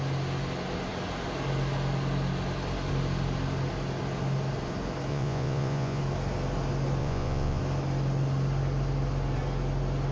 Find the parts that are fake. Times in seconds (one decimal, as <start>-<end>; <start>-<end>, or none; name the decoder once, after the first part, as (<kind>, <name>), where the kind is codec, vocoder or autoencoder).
5.1-6.0 (vocoder, Vocos); 7.0-7.6